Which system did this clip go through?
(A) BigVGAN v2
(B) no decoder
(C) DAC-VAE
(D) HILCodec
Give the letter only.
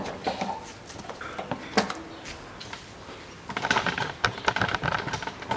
B